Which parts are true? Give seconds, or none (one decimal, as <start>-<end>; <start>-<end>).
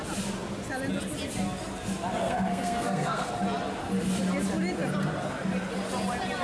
0.0-2.2; 3.3-6.4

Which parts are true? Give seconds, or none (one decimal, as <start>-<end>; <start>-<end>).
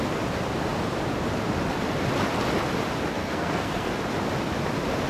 0.0-3.1; 3.9-5.1